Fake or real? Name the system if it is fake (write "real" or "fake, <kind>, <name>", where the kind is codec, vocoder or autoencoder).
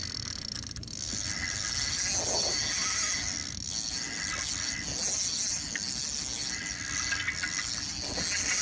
real